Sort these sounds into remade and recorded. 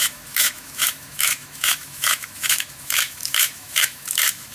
remade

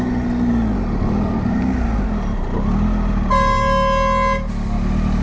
recorded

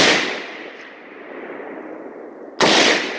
recorded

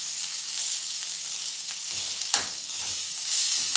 remade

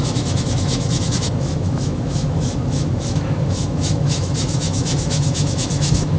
remade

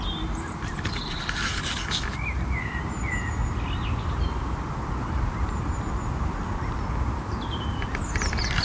recorded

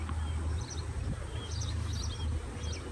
recorded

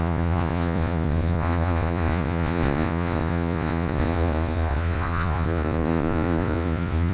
remade